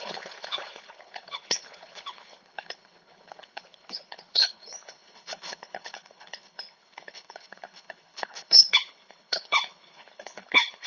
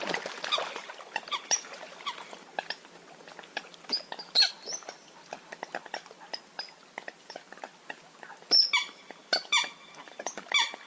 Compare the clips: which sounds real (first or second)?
second